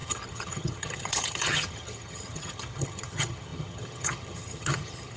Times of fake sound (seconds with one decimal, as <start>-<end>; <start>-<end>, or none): 0.0-5.2